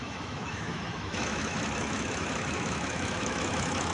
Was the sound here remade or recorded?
remade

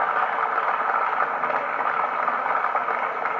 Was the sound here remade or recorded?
recorded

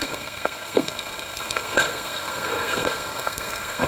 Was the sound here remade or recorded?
remade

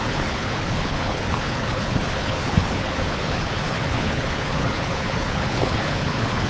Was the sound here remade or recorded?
remade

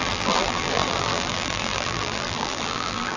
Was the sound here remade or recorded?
remade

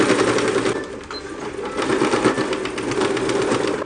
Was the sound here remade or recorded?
recorded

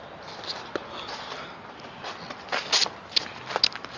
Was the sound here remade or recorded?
recorded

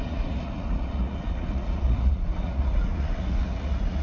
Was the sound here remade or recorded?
remade